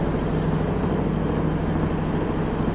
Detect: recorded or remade recorded